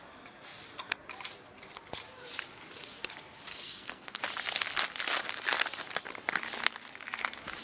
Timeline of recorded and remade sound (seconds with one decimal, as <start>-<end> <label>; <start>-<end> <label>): 0.0-3.5 recorded; 3.5-4.2 remade; 4.2-7.6 recorded